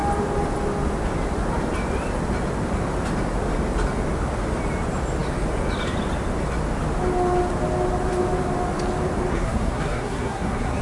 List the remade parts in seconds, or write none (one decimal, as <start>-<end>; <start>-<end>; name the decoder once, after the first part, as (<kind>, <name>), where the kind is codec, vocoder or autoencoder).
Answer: 9.3-10.8 (codec, SNAC)